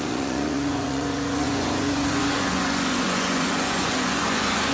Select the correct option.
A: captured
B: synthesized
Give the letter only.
B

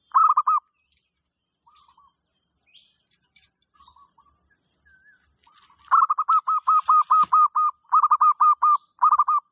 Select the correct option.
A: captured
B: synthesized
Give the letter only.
A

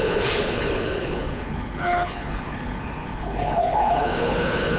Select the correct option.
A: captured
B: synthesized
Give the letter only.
B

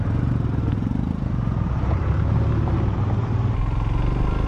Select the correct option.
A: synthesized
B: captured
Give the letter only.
B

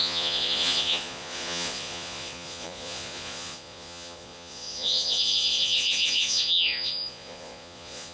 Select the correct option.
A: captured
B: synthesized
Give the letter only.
B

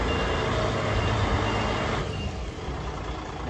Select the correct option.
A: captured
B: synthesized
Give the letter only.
A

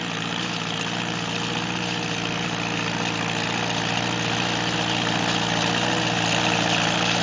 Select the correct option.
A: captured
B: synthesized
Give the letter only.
A